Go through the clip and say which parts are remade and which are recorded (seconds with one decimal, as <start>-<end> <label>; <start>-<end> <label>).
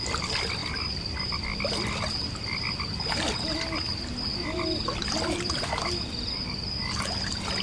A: 0.0-0.6 recorded; 0.6-3.3 remade; 3.3-4.3 recorded; 4.3-6.0 remade; 6.0-7.6 recorded